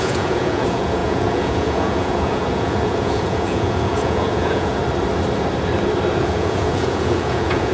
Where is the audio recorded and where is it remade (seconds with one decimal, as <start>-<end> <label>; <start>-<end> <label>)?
0.0-4.8 remade; 4.8-6.2 recorded; 6.2-7.7 remade